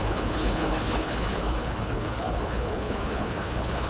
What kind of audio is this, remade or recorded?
remade